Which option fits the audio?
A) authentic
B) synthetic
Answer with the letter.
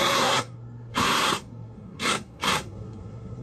B